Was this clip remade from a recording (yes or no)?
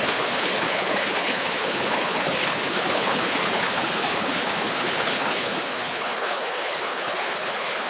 yes